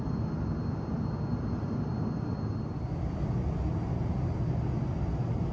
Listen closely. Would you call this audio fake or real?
real